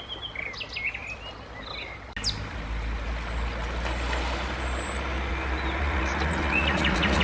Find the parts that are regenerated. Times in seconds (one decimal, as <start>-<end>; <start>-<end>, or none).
5.8-7.2